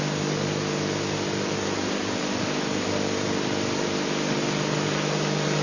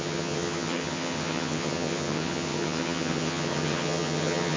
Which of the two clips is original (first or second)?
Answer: first